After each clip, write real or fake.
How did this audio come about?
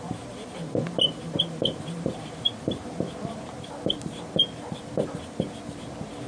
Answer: fake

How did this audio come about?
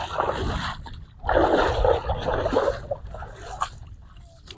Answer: real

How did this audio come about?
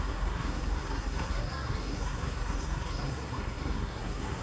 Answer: fake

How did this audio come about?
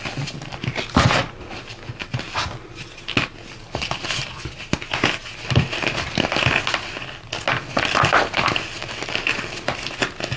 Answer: real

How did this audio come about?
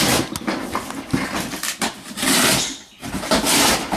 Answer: real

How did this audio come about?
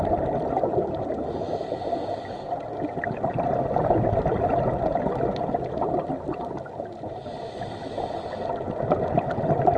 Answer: real